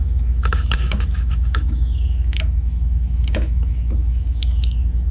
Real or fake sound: fake